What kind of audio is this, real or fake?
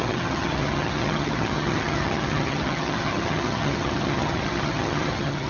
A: fake